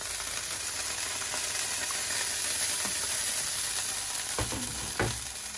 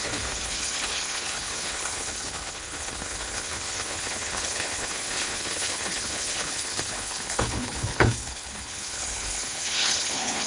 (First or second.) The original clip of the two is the first